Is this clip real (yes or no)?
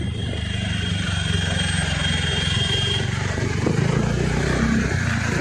no